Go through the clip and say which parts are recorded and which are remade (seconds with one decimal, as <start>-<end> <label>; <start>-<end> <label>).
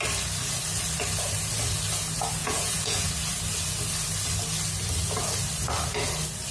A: 0.0-2.4 recorded; 2.4-3.1 remade; 3.1-6.5 recorded